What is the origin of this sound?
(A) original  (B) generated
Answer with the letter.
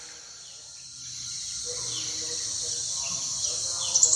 A